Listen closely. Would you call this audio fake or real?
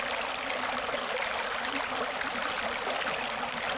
real